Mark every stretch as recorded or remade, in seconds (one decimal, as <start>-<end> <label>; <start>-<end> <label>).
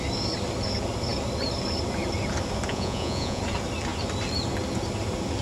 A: 0.0-2.7 recorded; 2.7-3.4 remade; 3.4-5.4 recorded